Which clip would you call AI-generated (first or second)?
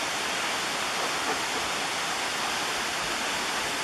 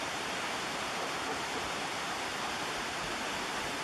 second